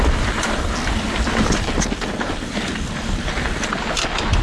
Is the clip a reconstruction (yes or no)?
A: no